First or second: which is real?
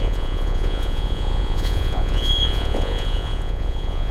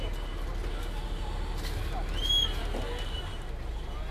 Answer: second